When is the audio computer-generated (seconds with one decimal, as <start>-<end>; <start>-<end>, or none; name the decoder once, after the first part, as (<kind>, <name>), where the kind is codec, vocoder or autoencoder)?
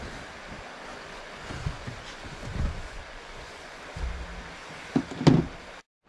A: 0.9-3.8 (vocoder, Vocos)